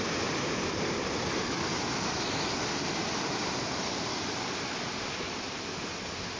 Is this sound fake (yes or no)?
no